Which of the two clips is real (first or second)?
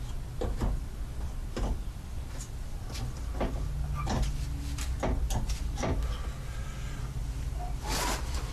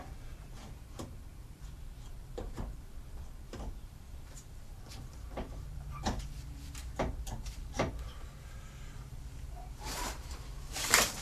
first